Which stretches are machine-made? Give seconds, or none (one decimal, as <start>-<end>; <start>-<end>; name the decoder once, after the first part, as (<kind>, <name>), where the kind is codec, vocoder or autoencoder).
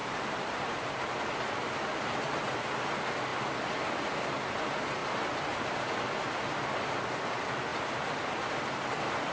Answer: 0.0-1.0 (vocoder, BigVGAN v2)